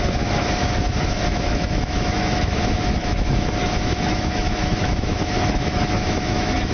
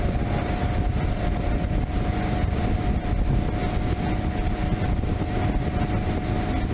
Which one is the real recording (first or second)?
second